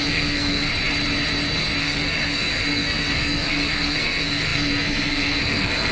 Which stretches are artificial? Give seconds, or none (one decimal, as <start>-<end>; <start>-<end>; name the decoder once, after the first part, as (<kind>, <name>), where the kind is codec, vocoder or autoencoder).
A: 0.0-0.7 (codec, SNAC); 1.8-5.9